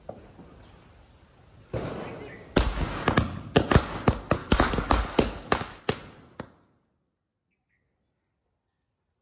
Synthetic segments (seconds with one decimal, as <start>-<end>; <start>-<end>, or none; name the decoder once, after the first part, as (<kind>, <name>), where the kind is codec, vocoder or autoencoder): 4.4-5.8 (codec, DAC)